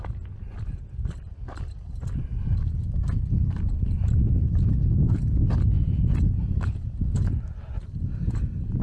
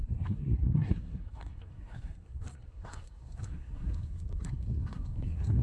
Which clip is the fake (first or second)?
second